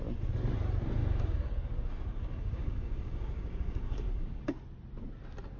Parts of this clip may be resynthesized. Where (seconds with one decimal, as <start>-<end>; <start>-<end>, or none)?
1.0-4.4